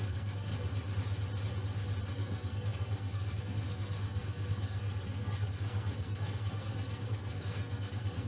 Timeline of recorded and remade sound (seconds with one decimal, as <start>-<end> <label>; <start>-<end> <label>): 0.0-0.5 remade; 0.5-2.1 recorded; 2.1-8.3 remade